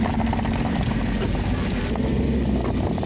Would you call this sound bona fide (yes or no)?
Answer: yes